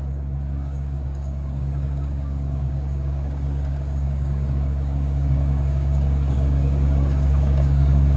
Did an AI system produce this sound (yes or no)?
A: yes